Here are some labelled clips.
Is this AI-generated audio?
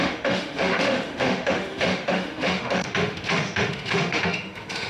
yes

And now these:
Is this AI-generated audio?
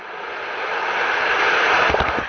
no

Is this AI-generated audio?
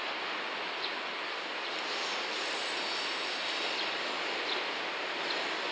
no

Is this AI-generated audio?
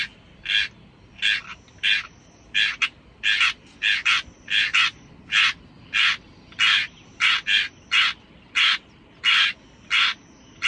no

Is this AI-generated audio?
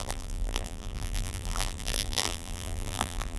yes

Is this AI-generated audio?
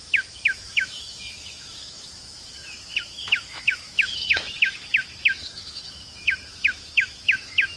yes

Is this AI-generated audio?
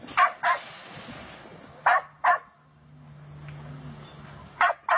no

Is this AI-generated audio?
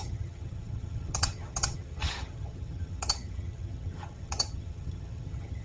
yes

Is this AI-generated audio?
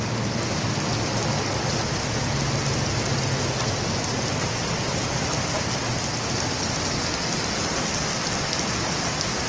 no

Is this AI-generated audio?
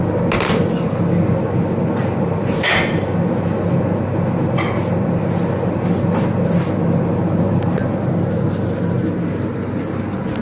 no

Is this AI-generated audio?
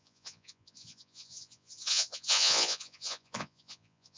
yes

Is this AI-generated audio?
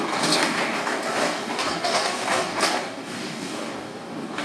yes